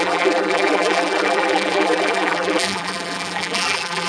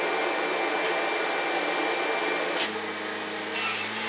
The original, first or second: second